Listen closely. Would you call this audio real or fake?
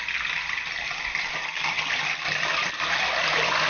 fake